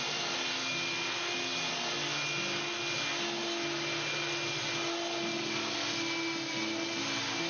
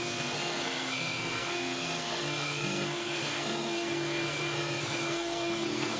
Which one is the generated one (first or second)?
second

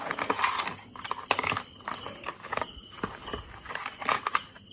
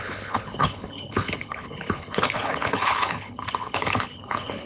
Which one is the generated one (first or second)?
second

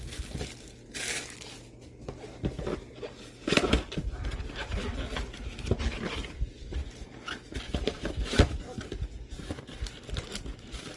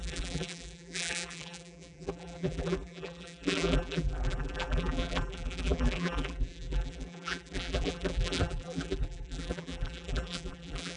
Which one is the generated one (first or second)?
second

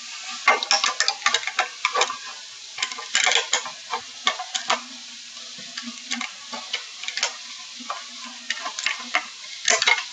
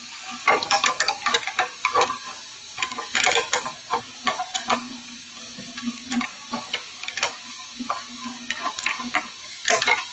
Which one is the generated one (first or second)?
second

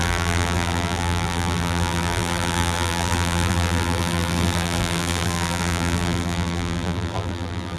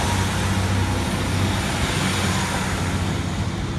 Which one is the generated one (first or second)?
first